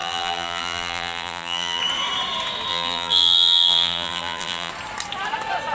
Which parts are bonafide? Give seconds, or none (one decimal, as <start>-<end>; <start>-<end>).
1.8-2.7; 4.7-5.7